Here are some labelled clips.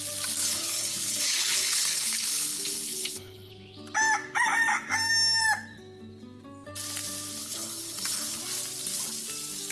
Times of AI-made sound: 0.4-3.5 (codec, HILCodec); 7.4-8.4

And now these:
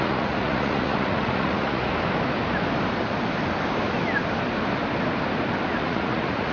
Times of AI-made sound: 0.0-1.9 (vocoder, Vocos); 5.8-6.5